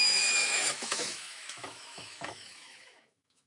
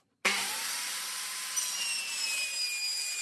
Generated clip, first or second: first